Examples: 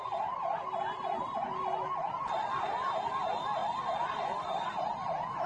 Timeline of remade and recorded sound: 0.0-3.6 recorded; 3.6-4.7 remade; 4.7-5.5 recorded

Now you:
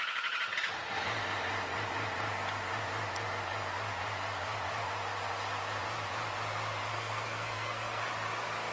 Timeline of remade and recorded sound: 0.0-6.9 recorded; 6.9-8.1 remade; 8.1-8.7 recorded

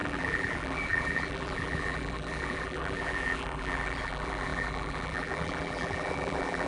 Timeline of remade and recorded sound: 0.0-6.7 remade

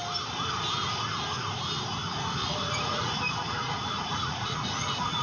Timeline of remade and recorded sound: 0.0-2.4 recorded; 2.4-3.2 remade; 3.2-3.6 recorded; 3.6-5.2 remade

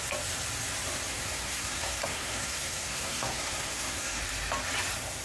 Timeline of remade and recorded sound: 0.0-1.1 recorded; 1.1-4.2 remade; 4.2-5.2 recorded

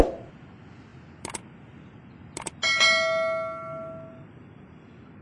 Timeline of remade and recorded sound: 0.0-5.2 recorded